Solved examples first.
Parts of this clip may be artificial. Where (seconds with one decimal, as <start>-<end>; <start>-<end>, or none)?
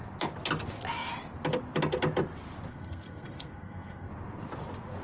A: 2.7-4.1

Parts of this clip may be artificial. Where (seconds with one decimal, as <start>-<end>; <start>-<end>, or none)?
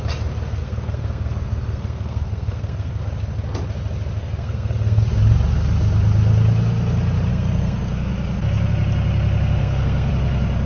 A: 0.6-3.0; 4.2-5.0; 7.3-8.1; 9.6-10.1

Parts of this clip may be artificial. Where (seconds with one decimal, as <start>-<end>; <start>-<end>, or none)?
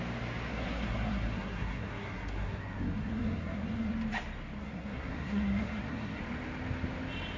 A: 0.5-3.9; 4.6-6.2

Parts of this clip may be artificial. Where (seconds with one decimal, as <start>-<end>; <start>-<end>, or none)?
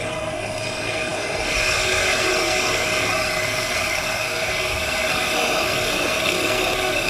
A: 0.0-7.1